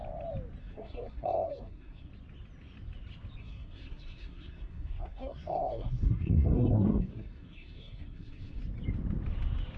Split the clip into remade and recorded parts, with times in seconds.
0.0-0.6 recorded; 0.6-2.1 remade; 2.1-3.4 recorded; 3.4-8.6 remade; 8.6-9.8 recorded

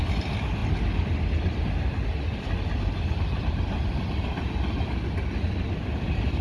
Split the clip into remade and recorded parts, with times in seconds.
0.0-6.4 recorded